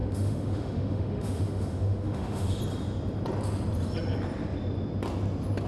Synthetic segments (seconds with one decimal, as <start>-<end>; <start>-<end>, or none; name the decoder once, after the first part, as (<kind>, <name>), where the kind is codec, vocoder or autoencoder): 0.0-2.6 (autoencoder, DAC-VAE)